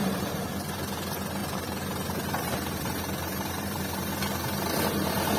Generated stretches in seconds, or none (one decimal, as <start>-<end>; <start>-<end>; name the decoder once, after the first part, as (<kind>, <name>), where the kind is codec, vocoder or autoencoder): 0.0-0.5 (vocoder, BigVGAN v2); 1.4-4.1